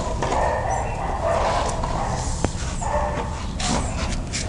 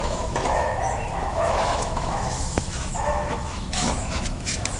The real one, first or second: first